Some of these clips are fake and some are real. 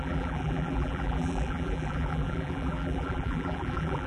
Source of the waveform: fake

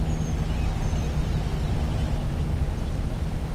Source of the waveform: real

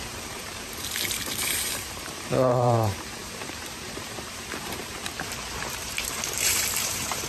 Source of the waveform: fake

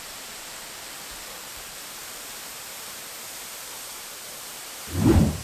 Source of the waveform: fake